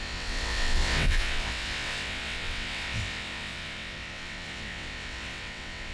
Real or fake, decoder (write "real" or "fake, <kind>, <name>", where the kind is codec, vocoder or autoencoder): fake, vocoder, WaveNeXt